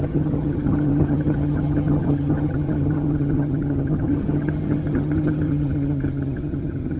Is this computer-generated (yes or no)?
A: yes